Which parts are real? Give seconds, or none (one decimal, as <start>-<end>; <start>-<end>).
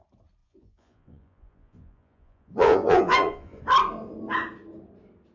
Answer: 0.0-0.4; 3.6-5.3